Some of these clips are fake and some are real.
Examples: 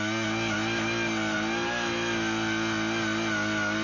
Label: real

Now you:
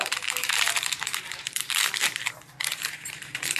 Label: fake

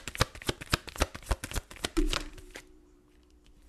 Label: fake